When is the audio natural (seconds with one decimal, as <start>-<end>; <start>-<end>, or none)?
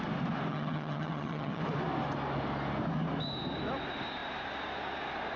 0.0-0.5; 1.6-5.4